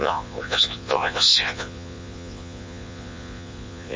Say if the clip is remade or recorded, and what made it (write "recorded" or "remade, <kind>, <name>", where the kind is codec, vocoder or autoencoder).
remade, vocoder, Vocos